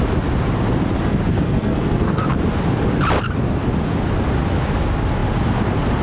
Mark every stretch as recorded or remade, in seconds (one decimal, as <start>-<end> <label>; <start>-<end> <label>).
0.0-1.3 recorded; 1.3-2.2 remade; 2.2-6.0 recorded